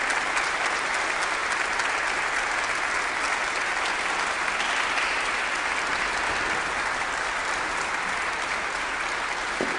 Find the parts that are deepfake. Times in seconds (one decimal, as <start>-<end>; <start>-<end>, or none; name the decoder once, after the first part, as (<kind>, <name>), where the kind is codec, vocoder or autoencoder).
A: none